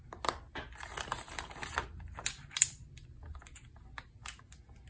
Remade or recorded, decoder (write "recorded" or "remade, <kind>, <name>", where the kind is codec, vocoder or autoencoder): recorded